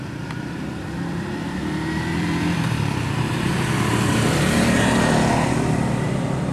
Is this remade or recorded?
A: remade